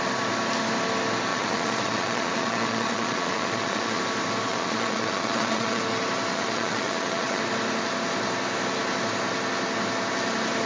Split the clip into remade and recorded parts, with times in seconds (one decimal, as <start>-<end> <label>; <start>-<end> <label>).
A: 0.0-1.3 recorded; 1.3-4.0 remade; 4.0-4.5 recorded; 4.5-5.8 remade; 5.8-6.3 recorded; 6.3-7.4 remade; 7.4-10.7 recorded